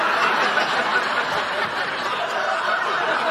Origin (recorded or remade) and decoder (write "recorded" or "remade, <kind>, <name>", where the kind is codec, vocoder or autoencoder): recorded